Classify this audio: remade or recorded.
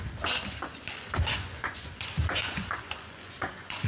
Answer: remade